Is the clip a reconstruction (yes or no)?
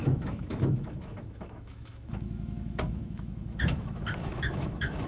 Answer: yes